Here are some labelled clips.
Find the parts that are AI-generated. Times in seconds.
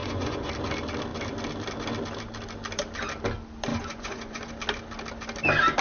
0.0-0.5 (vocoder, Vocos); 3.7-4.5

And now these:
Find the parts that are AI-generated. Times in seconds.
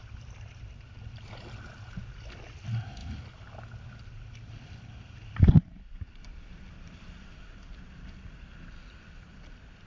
none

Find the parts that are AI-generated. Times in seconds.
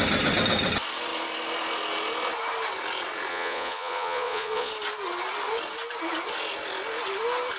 3.3-4.7 (vocoder, Vocos)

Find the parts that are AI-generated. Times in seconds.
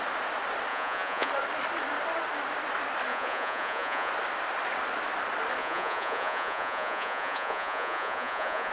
0.7-1.3 (vocoder, Vocos); 3.1-4.1; 5.6-8.7